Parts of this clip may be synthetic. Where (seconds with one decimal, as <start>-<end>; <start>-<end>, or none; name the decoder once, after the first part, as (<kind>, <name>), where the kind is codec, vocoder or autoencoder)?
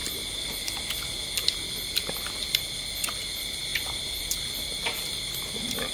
none